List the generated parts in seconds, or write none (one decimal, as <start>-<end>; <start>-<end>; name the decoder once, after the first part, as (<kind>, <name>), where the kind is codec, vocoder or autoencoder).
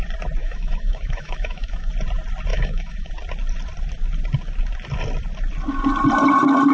0.4-1.9 (autoencoder, DAC-VAE); 2.5-3.1